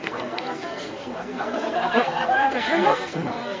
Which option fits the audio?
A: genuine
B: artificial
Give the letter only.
B